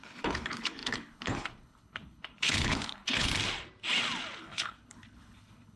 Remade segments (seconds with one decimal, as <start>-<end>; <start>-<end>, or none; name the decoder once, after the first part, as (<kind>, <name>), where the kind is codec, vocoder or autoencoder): 0.0-3.3 (codec, HILCodec); 4.4-5.8